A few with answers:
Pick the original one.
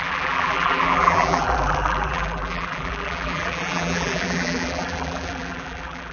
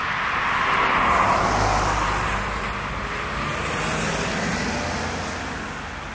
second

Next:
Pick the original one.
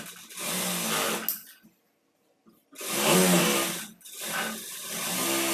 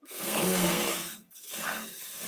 first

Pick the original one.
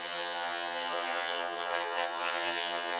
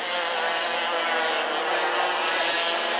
second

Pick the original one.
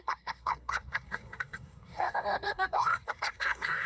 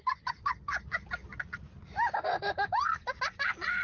second